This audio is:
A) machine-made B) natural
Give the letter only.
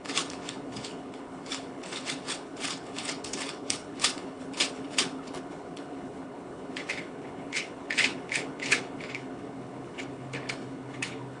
A